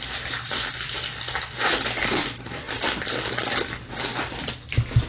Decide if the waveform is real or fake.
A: real